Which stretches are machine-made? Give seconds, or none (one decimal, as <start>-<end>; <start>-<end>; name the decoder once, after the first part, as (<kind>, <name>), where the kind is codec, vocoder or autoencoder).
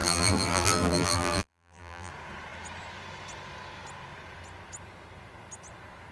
0.0-2.1 (vocoder, BigVGAN v2)